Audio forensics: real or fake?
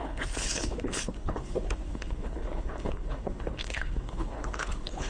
fake